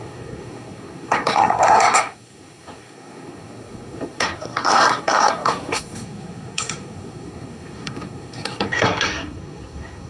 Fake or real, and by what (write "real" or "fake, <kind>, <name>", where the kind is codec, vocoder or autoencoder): fake, codec, SNAC